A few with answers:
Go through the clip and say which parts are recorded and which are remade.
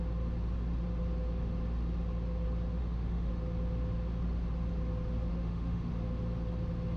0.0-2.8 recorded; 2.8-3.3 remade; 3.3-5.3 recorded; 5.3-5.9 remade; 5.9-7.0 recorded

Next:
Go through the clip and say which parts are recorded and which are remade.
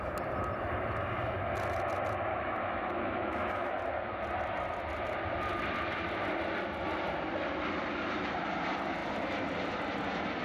0.0-2.3 recorded; 2.3-3.7 remade; 3.7-10.4 recorded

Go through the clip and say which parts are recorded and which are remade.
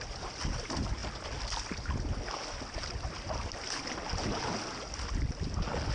0.0-5.9 recorded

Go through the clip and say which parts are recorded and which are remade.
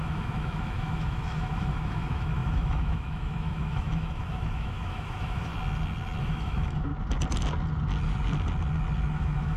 0.0-5.5 remade; 5.5-6.2 recorded; 6.2-6.9 remade; 6.9-9.1 recorded; 9.1-9.6 remade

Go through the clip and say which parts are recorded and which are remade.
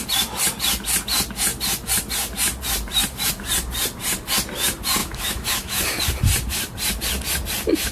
0.0-5.0 recorded; 5.0-6.0 remade; 6.0-7.9 recorded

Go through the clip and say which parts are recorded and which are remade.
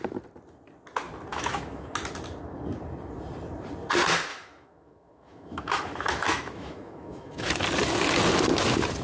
0.0-1.3 recorded; 1.3-1.9 remade; 1.9-4.3 recorded; 4.3-7.5 remade; 7.5-9.0 recorded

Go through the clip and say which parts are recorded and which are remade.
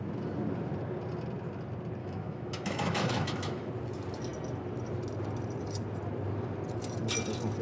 0.0-2.0 recorded; 2.0-3.7 remade; 3.7-7.6 recorded